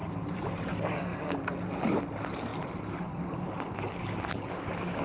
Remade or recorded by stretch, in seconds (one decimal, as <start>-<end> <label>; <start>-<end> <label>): 0.0-0.7 remade; 0.7-2.5 recorded; 2.5-3.5 remade; 3.5-5.0 recorded